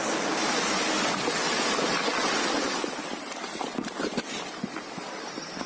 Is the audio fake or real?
real